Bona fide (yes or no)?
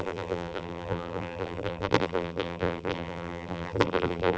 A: no